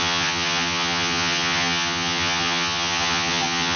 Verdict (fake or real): fake